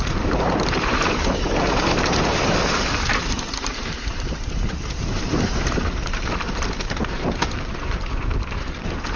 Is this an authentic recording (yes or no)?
no